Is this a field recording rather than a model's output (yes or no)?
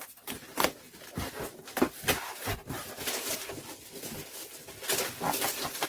yes